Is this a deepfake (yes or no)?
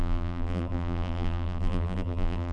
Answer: yes